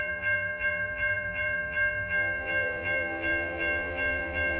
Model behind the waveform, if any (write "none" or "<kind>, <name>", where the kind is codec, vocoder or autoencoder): vocoder, BigVGAN v2